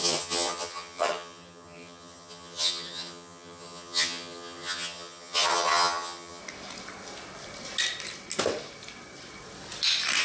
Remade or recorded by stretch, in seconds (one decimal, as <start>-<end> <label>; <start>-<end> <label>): 0.0-6.4 remade; 6.4-10.2 recorded